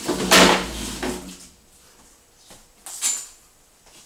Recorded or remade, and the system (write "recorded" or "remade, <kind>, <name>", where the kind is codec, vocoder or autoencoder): recorded